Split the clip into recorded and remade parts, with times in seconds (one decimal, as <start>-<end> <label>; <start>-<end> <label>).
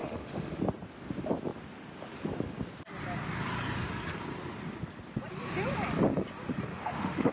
0.0-0.6 remade; 0.6-6.7 recorded; 6.7-7.3 remade